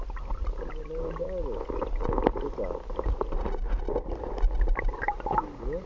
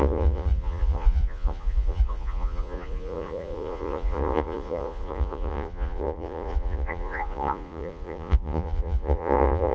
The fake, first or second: second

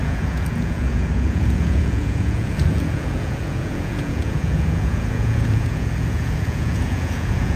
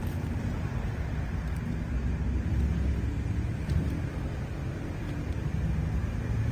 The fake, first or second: first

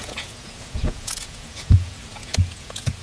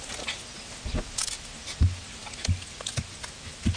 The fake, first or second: first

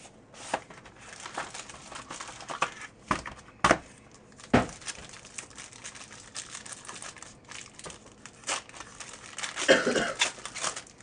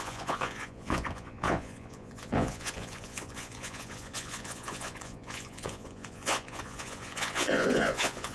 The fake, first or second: second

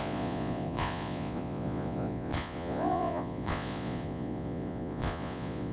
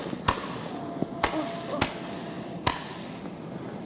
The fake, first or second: first